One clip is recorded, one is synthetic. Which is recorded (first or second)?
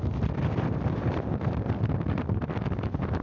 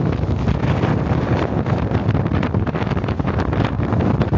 second